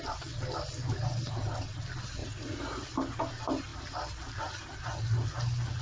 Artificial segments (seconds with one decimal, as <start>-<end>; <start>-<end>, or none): 2.2-2.9